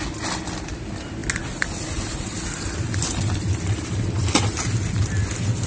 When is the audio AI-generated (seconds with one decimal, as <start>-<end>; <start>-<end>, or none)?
none